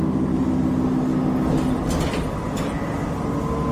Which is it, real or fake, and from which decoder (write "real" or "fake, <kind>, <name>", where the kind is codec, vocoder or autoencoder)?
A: real